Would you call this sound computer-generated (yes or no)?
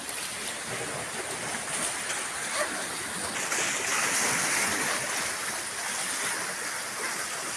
no